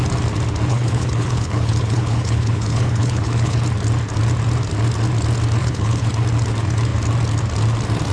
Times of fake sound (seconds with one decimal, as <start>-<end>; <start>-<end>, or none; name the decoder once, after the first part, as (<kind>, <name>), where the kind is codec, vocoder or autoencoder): 0.7-3.6 (codec, HILCodec); 5.6-6.1